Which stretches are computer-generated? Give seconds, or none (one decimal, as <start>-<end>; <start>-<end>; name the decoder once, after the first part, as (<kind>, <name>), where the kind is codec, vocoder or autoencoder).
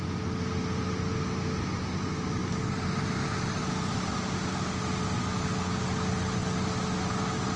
none